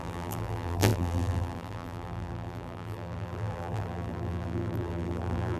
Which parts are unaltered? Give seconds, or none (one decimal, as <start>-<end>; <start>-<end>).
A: none